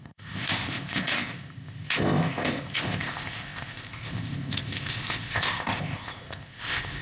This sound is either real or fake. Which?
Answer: fake